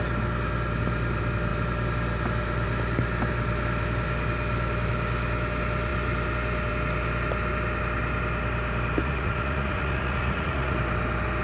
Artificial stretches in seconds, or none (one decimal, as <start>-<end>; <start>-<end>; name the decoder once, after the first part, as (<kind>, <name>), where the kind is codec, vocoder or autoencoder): 9.0-10.8 (vocoder, Vocos)